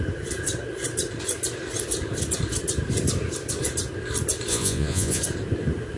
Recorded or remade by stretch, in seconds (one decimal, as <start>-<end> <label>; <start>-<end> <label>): 0.0-4.5 recorded; 4.5-5.2 remade; 5.2-6.0 recorded